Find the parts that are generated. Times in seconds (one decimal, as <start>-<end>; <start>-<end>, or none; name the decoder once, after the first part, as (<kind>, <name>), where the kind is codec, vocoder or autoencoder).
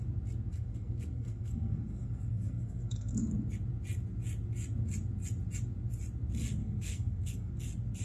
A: 0.5-3.3 (codec, SNAC); 6.6-7.5